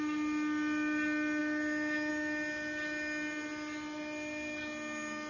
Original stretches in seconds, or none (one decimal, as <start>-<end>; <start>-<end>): 0.0-5.3

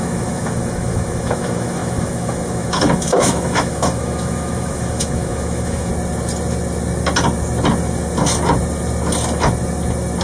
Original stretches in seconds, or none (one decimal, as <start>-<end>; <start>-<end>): 5.9-10.2

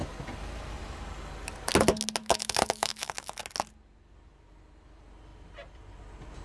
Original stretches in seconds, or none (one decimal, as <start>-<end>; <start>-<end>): 0.0-2.2; 3.4-6.4

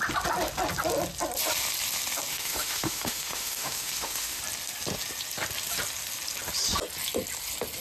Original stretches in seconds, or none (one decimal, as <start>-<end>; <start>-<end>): 0.0-2.3; 4.4-7.8